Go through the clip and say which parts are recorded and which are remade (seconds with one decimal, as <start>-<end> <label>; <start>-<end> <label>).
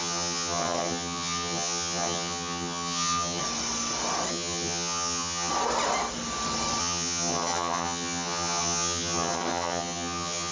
0.0-3.4 remade; 3.4-4.3 recorded; 4.3-5.5 remade; 5.5-6.8 recorded; 6.8-10.5 remade